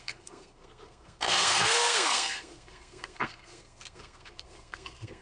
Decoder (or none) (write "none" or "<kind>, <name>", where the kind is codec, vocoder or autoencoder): codec, SNAC